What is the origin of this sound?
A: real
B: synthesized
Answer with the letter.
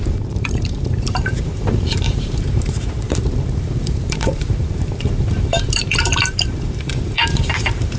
B